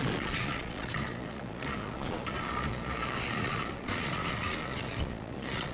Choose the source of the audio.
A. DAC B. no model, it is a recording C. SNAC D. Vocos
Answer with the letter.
D